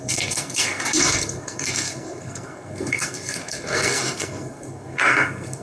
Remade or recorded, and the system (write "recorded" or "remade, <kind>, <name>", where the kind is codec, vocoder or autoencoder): remade, codec, SNAC